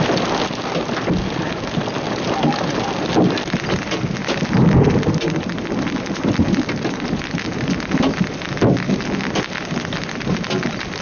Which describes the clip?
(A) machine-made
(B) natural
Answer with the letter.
B